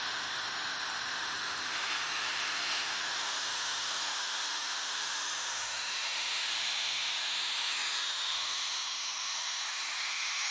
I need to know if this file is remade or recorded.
remade